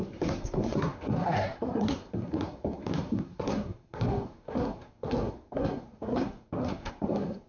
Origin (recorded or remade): remade